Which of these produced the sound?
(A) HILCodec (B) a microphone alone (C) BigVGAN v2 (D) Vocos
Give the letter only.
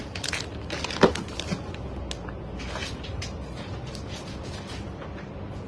B